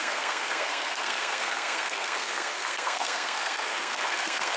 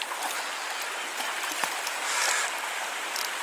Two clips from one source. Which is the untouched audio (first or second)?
second